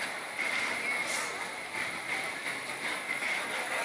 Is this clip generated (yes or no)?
no